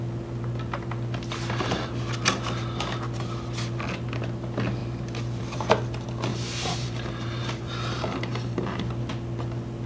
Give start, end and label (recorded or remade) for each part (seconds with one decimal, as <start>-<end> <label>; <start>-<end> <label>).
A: 0.0-6.3 recorded; 6.3-8.8 remade; 8.8-9.9 recorded